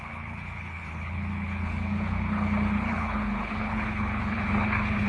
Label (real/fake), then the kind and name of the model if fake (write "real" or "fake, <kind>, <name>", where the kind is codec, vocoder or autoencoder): fake, codec, HILCodec